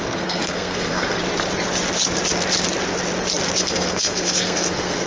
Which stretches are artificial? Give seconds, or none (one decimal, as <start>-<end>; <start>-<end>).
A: 0.0-1.2; 3.6-5.1